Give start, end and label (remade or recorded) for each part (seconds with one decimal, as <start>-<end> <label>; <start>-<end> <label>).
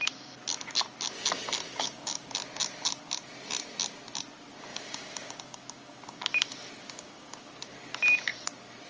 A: 0.0-1.7 recorded; 1.7-2.3 remade; 2.3-4.7 recorded; 4.7-6.2 remade; 6.2-6.8 recorded; 6.8-7.5 remade; 7.5-8.9 recorded